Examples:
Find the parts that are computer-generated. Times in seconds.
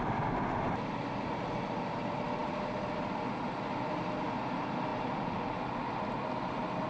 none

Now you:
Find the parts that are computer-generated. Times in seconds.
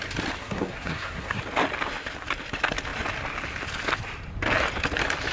0.4-1.4 (codec, SNAC)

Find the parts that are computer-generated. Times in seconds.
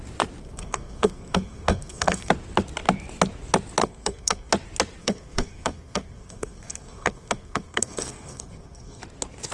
0.4-2.3 (codec, SNAC); 3.8-4.5; 5.0-9.0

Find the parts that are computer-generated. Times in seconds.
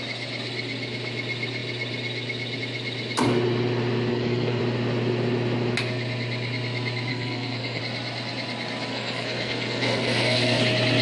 4.1-4.6 (codec, SNAC); 7.1-7.8; 8.9-10.6